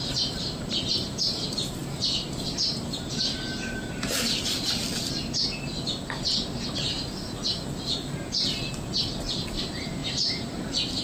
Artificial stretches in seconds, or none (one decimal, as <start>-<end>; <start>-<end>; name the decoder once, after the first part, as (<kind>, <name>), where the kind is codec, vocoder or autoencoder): 10.0-10.6 (vocoder, BigVGAN v2)